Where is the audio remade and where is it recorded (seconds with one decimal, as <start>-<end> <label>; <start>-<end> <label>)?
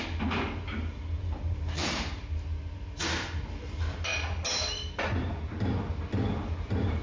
0.0-1.2 recorded; 1.2-2.2 remade; 2.2-7.0 recorded